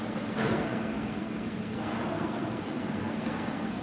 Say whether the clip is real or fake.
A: fake